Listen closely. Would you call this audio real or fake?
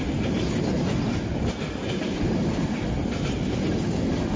real